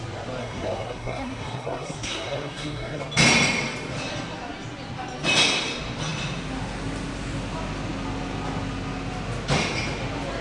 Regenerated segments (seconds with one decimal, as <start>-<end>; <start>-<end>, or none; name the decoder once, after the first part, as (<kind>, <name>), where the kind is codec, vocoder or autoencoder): 0.4-3.0 (codec, SNAC)